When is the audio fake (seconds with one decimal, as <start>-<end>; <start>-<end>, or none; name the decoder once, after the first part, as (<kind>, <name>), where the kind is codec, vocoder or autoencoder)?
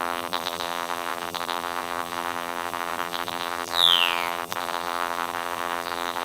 0.0-6.2 (vocoder, BigVGAN v2)